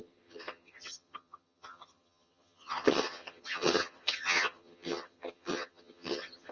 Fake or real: fake